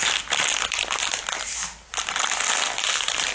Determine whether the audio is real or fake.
real